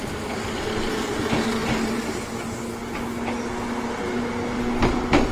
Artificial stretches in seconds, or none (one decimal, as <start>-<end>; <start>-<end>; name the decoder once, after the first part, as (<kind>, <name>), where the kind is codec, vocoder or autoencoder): none